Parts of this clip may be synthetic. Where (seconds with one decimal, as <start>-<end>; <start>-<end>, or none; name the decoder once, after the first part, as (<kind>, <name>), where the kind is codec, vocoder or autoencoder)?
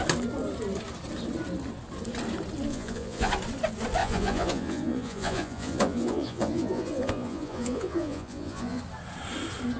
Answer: 2.7-3.3 (vocoder, Vocos); 4.0-8.8